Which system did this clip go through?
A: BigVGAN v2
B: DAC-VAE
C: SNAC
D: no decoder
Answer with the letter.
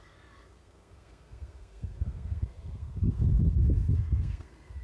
C